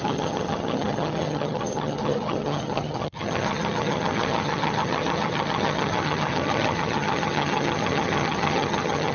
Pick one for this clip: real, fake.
fake